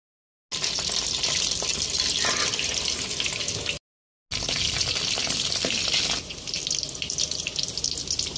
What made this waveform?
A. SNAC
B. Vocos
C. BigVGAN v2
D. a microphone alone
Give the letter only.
D